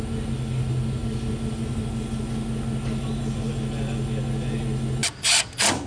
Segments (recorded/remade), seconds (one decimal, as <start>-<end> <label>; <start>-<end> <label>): 0.0-5.9 recorded